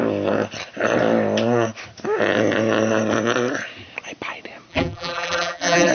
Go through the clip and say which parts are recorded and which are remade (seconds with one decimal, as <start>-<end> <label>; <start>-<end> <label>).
0.0-4.7 recorded; 4.7-5.9 remade